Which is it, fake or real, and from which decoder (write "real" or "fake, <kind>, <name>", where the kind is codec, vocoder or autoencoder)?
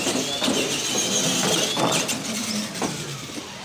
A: real